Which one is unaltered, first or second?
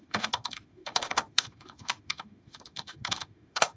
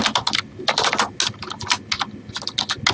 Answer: second